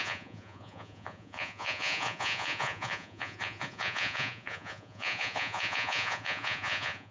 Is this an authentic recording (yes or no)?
no